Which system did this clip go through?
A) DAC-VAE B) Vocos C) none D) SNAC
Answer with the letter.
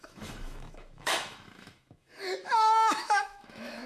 A